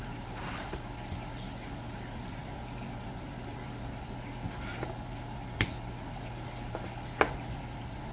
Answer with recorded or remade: recorded